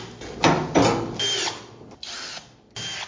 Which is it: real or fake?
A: real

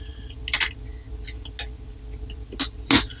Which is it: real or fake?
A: real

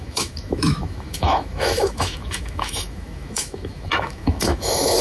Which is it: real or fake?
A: fake